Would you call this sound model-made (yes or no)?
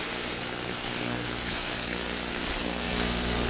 yes